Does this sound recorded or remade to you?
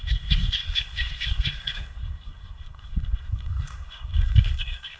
remade